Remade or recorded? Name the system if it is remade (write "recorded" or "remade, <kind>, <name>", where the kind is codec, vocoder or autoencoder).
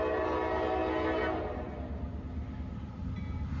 recorded